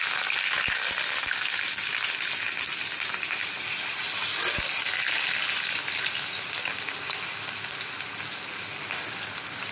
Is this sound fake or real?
real